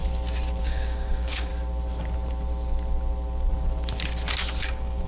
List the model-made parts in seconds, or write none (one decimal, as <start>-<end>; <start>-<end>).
0.6-1.5; 4.6-5.1